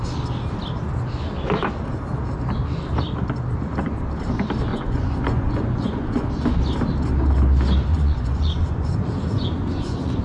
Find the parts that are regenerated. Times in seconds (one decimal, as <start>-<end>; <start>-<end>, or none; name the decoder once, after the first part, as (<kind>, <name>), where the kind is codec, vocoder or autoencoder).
4.7-6.3 (vocoder, Vocos); 7.9-10.2